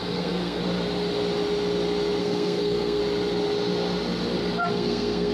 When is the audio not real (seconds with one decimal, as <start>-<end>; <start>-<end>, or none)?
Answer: 0.0-0.6; 2.2-3.0; 4.7-5.3